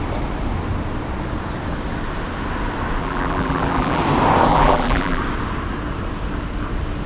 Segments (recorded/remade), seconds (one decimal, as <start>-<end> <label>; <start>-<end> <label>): 0.0-3.0 recorded; 3.0-4.0 remade; 4.0-4.5 recorded; 4.5-5.2 remade; 5.2-7.1 recorded